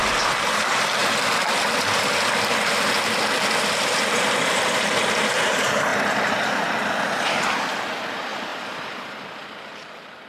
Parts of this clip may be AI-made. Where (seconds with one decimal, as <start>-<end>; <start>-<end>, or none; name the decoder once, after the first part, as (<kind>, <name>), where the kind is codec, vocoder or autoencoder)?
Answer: 5.9-6.9 (vocoder, BigVGAN v2); 8.5-10.3